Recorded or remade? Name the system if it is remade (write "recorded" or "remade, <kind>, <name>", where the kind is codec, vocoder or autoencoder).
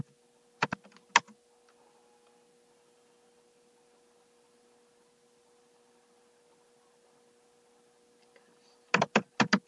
recorded